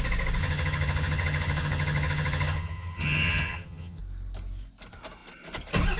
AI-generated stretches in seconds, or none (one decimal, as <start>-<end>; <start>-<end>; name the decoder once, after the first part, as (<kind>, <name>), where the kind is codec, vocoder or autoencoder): 0.4-4.0 (vocoder, HiFi-GAN)